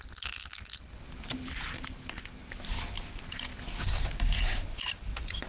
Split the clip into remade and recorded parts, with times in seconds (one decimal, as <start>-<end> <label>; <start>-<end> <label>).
0.0-5.5 recorded